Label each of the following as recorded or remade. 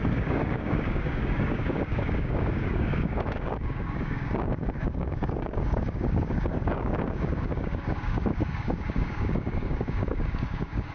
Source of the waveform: remade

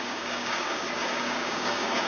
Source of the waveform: remade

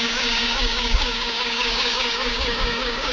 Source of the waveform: remade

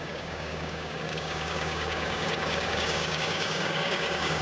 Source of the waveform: remade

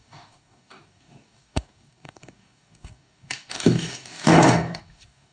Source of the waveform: remade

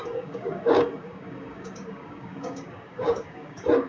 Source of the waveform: remade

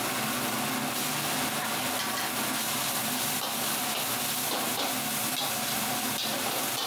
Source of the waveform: recorded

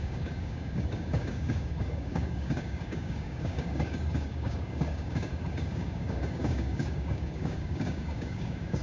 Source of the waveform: remade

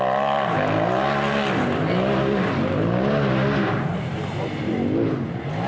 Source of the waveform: recorded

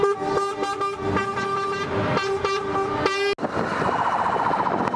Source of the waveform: recorded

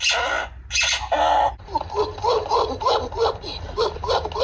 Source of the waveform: recorded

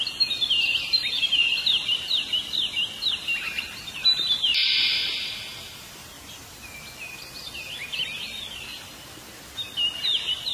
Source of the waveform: recorded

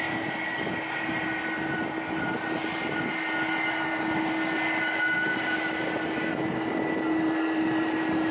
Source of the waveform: recorded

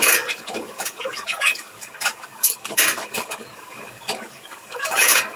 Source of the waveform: remade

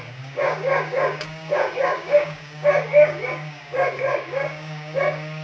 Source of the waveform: remade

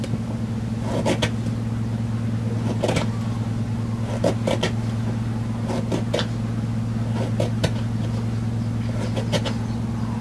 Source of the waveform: recorded